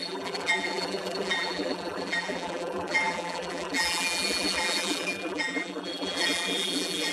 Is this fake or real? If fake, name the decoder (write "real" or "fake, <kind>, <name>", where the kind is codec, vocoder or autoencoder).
fake, vocoder, BigVGAN v2